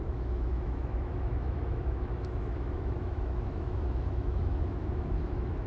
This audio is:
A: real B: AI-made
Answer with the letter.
B